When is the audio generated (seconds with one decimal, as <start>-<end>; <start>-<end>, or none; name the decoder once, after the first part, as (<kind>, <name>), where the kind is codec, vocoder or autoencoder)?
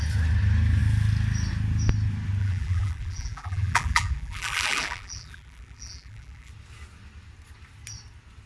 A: 2.4-6.5 (vocoder, BigVGAN v2)